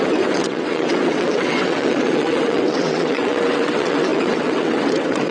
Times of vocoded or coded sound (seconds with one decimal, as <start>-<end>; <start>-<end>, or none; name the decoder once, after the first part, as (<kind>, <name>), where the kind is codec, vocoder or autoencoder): 0.0-5.3 (vocoder, WaveNeXt)